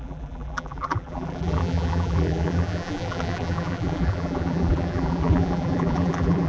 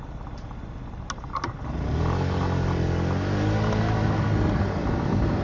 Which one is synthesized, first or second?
first